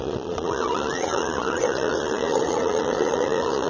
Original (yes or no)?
no